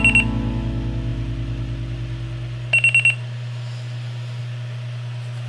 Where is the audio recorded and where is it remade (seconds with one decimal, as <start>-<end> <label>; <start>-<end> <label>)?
0.0-5.5 recorded